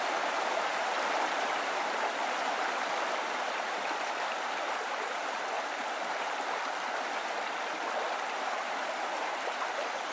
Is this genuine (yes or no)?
no